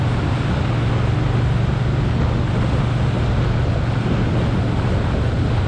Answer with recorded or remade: recorded